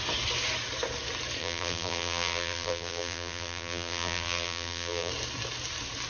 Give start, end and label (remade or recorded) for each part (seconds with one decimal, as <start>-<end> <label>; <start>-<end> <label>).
0.0-1.4 recorded; 1.4-5.1 remade; 5.1-6.1 recorded